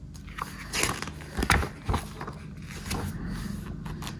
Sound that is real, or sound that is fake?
real